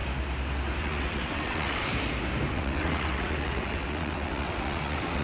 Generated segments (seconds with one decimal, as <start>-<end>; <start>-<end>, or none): 0.8-1.9; 2.5-5.2